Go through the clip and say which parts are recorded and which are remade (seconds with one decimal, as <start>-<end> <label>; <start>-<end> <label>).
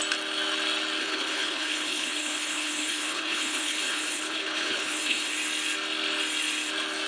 0.0-1.0 recorded; 1.0-5.3 remade; 5.3-7.1 recorded